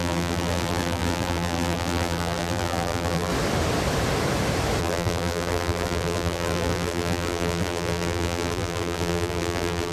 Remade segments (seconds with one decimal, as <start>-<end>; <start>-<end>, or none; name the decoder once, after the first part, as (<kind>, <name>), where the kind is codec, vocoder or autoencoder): 0.0-3.3 (vocoder, BigVGAN v2); 4.8-9.9